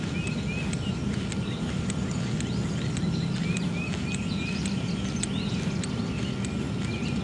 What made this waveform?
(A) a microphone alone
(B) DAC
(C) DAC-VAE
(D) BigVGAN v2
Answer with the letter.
A